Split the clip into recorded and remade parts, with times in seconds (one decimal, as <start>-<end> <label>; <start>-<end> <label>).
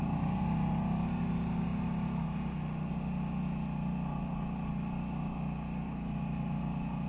0.0-7.1 recorded